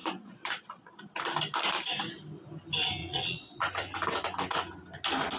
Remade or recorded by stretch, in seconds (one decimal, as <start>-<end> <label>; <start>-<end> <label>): 0.0-1.0 remade; 1.0-3.0 recorded; 3.0-3.6 remade; 3.6-5.4 recorded